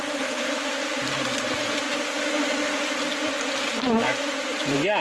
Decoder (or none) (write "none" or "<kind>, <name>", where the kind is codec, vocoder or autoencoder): vocoder, BigVGAN v2